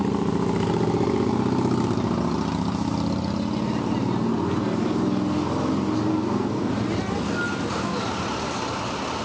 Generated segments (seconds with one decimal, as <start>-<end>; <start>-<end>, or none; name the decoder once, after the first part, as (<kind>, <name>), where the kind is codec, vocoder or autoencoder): 6.1-6.7 (codec, SNAC)